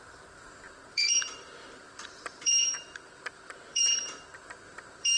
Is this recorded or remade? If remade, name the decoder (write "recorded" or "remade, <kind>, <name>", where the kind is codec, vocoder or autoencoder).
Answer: remade, vocoder, BigVGAN v2